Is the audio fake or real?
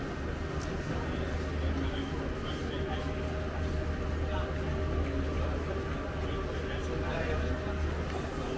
real